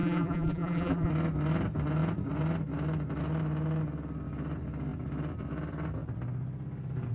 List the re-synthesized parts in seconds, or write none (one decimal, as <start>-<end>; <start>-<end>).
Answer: 0.0-1.1

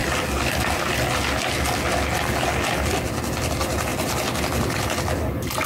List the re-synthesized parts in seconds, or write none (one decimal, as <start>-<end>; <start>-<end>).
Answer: none

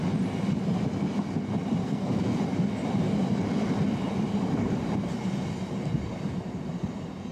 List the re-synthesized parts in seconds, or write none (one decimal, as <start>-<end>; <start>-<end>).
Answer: 1.8-2.4

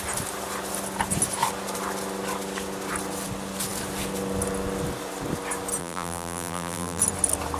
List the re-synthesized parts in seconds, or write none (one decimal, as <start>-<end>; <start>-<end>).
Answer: 5.8-7.0

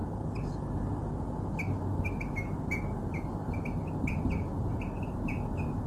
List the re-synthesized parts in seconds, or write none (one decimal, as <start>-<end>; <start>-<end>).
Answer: none

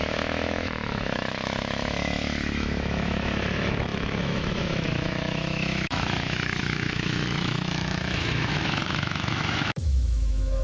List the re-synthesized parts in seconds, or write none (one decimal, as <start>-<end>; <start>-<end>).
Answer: 0.0-10.6

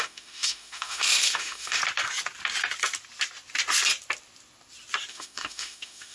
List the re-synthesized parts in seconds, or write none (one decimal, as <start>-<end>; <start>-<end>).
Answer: 0.0-1.8; 5.1-6.1